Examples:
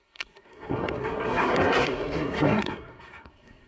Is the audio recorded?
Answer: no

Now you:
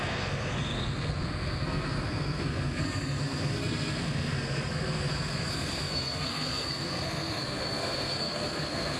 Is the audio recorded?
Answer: no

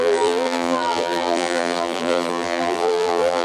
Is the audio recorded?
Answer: no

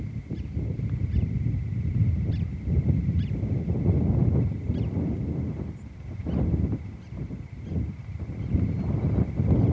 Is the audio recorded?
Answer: yes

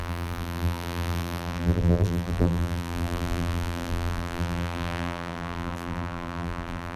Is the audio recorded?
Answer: no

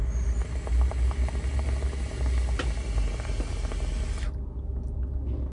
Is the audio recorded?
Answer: yes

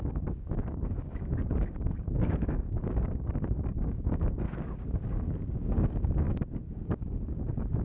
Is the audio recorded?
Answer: no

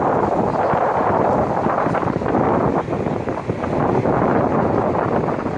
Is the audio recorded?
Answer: no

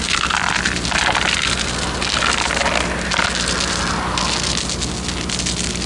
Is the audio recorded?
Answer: yes